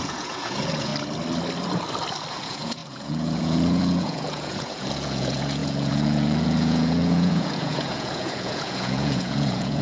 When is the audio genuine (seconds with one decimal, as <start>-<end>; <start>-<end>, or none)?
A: 0.9-2.3